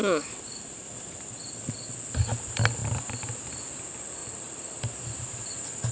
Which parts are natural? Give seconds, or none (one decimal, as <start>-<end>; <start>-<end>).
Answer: 0.0-2.8; 3.8-4.2; 5.5-5.9